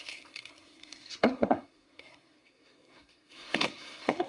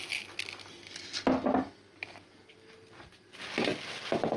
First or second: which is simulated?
first